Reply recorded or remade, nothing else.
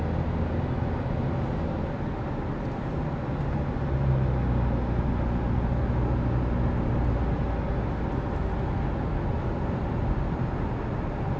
recorded